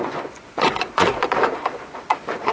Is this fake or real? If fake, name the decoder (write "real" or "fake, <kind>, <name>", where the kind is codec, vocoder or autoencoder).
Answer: fake, vocoder, Vocos